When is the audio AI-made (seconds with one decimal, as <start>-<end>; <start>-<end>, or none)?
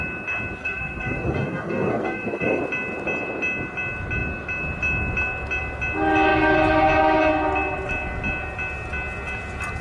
0.6-2.6